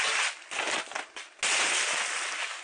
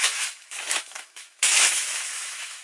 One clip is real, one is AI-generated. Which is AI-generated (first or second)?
second